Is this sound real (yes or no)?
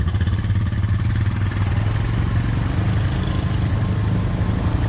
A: yes